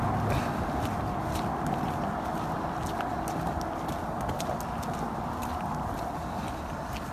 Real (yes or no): yes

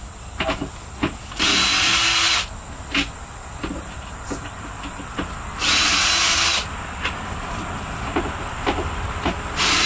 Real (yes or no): yes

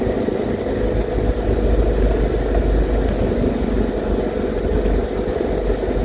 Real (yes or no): yes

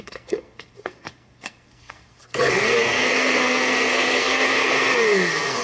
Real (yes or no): no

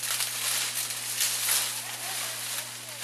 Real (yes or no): yes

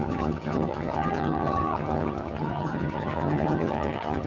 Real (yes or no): no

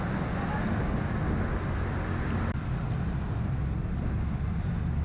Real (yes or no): yes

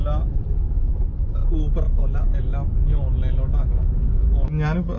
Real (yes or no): yes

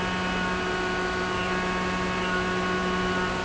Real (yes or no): yes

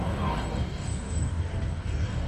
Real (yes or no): no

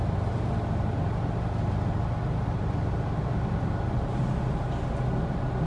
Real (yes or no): yes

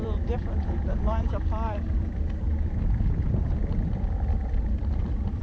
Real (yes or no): no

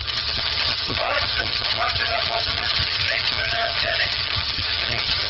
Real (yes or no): no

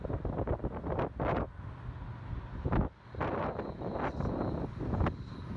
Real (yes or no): yes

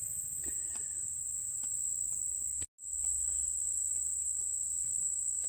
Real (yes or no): yes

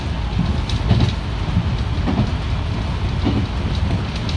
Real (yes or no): yes